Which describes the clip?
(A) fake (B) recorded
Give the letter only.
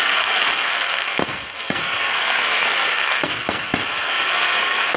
A